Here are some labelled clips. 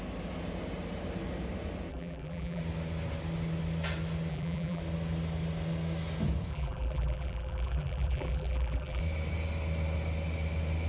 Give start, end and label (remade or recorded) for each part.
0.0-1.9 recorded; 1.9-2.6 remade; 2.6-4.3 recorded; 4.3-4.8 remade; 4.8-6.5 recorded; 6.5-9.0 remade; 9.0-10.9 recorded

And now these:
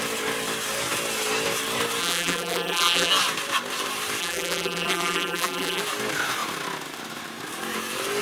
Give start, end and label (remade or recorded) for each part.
0.0-2.0 recorded; 2.0-3.1 remade; 3.1-4.2 recorded; 4.2-5.8 remade; 5.8-8.2 recorded

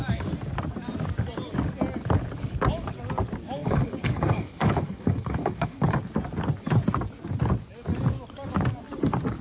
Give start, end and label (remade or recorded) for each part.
0.0-3.6 recorded; 3.6-6.0 remade; 6.0-9.4 recorded

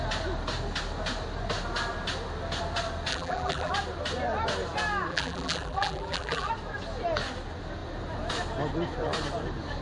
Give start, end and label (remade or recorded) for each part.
0.0-3.1 recorded; 3.1-3.7 remade; 3.7-5.1 recorded; 5.1-6.5 remade; 6.5-9.8 recorded

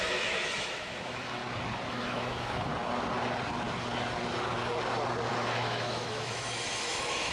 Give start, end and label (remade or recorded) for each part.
0.0-1.4 remade; 1.4-1.9 recorded; 1.9-2.7 remade; 2.7-5.3 recorded; 5.3-7.3 remade